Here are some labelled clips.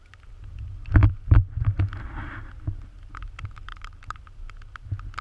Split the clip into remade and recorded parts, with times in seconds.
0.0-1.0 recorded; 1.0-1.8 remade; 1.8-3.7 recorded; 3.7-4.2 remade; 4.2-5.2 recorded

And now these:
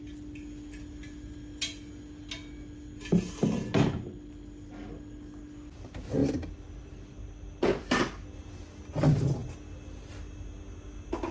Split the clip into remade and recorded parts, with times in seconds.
0.0-11.3 recorded

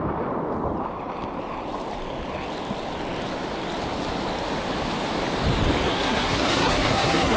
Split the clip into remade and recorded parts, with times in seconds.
0.0-5.9 recorded; 5.9-7.4 remade

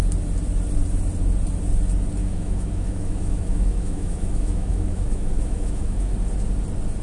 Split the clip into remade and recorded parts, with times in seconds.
0.0-2.2 recorded; 2.2-6.1 remade; 6.1-7.0 recorded

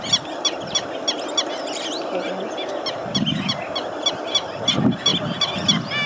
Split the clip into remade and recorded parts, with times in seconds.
0.0-6.1 recorded